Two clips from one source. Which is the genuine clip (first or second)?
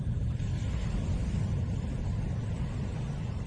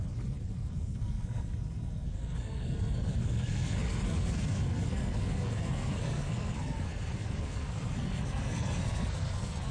first